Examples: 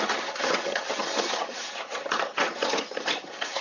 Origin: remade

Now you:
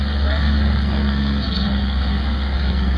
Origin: remade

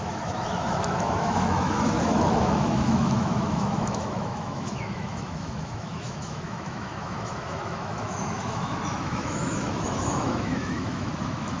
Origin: remade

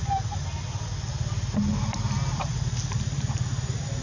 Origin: recorded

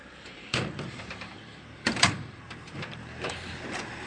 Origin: remade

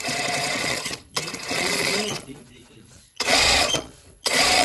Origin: remade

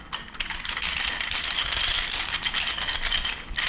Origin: recorded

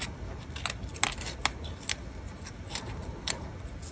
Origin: recorded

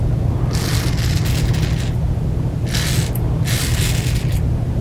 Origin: recorded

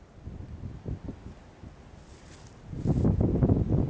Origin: recorded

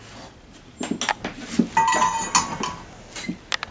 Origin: recorded